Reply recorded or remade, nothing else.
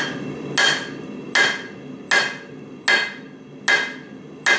recorded